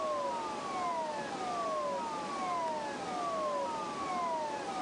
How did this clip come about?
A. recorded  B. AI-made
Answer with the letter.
A